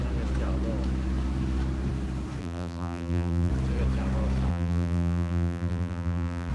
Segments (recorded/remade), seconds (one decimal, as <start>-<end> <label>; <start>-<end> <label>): 0.0-2.4 recorded; 2.4-3.5 remade; 3.5-4.5 recorded; 4.5-6.5 remade